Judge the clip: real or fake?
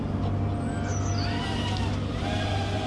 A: real